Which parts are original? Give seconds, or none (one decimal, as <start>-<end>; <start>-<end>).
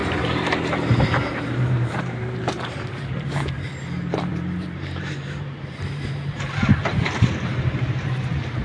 none